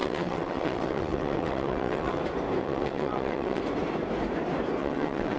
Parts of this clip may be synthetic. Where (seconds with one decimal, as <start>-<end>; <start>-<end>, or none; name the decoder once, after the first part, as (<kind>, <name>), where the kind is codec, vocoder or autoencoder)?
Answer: 0.0-2.2 (vocoder, WaveNeXt); 2.6-3.6; 4.8-5.4